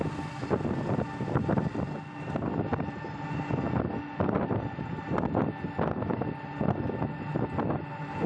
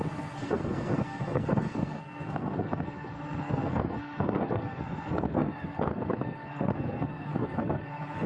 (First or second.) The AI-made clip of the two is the second